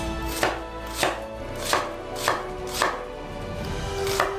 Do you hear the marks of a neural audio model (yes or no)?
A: no